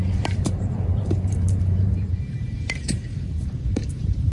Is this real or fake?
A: fake